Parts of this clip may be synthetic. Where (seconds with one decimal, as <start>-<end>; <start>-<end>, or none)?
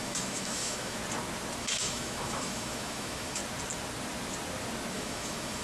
0.0-1.0; 1.6-3.4; 4.9-5.6